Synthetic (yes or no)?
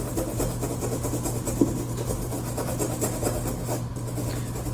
no